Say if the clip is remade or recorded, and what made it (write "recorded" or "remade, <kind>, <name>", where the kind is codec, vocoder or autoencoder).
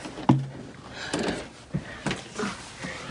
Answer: recorded